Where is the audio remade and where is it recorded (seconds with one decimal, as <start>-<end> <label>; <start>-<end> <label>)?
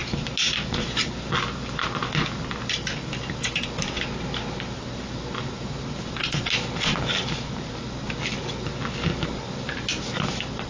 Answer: 0.0-10.7 recorded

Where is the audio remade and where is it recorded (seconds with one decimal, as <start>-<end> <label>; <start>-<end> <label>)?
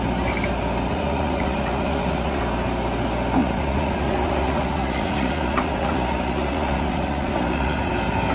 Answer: 0.0-0.9 recorded; 0.9-2.4 remade; 2.4-3.4 recorded; 3.4-7.9 remade; 7.9-8.3 recorded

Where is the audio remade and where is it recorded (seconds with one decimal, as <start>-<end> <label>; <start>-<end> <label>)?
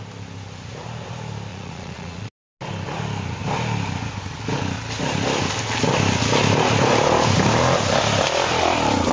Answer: 0.0-1.5 recorded; 1.5-2.3 remade; 2.3-9.1 recorded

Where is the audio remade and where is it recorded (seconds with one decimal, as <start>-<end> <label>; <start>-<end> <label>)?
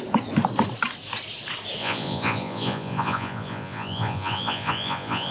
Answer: 0.0-1.8 recorded; 1.8-5.3 remade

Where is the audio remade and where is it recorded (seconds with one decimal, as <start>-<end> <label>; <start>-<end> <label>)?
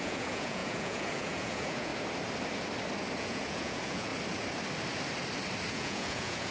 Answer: 0.0-1.9 remade; 1.9-3.2 recorded; 3.2-4.1 remade; 4.1-5.7 recorded; 5.7-6.5 remade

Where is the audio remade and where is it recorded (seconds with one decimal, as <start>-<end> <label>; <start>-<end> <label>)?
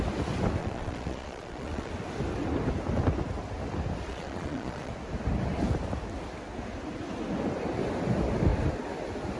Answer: 0.0-0.6 recorded; 0.6-1.9 remade; 1.9-4.1 recorded; 4.1-4.9 remade; 4.9-9.4 recorded